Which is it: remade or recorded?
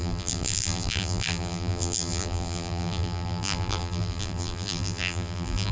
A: remade